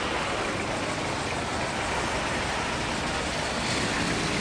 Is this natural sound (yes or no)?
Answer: yes